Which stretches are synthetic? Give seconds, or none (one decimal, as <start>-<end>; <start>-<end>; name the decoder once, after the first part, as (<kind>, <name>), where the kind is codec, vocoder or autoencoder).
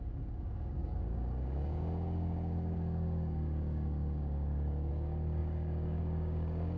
0.0-6.8 (codec, DAC)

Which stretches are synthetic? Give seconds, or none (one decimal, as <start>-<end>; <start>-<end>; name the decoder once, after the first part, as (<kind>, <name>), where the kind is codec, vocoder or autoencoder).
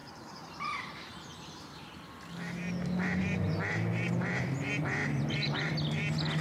0.0-2.1 (vocoder, BigVGAN v2); 5.0-5.7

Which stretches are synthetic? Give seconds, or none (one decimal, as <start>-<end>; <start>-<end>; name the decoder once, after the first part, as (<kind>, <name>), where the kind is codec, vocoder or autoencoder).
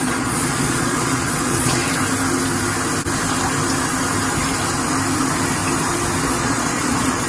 0.0-1.8 (vocoder, Vocos); 6.2-7.3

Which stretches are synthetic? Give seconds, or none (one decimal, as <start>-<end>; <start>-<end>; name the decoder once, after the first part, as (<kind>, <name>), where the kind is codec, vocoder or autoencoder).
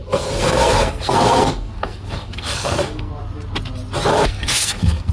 0.0-3.1 (codec, SNAC); 4.1-5.1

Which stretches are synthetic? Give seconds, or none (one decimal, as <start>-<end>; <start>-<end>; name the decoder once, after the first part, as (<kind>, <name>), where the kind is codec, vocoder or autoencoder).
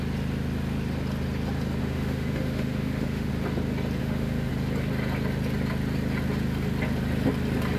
1.8-3.3 (autoencoder, DAC-VAE); 4.0-4.5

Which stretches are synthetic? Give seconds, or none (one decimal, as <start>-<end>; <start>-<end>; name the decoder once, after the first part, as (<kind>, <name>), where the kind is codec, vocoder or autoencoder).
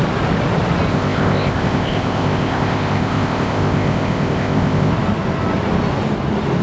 0.9-4.9 (codec, ZipCodec)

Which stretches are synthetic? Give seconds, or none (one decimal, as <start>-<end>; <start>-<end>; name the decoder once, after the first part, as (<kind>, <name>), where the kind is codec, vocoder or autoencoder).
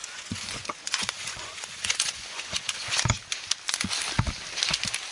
0.0-3.1 (vocoder, Vocos)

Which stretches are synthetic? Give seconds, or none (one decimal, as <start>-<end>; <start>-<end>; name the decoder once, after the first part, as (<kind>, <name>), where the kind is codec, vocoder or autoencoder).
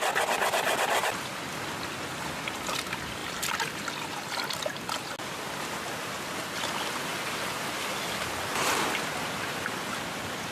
none